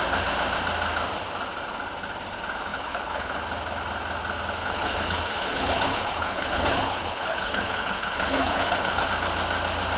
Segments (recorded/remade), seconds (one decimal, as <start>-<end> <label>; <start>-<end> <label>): 0.0-2.7 recorded; 2.7-3.4 remade; 3.4-4.6 recorded; 4.6-9.1 remade; 9.1-10.0 recorded